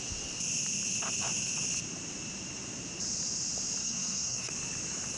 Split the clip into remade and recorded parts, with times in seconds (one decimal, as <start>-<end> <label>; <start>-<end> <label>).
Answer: 0.0-3.8 recorded; 3.8-4.5 remade; 4.5-5.2 recorded